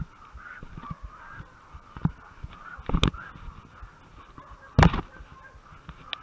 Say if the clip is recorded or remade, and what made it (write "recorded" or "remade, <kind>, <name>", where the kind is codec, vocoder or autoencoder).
recorded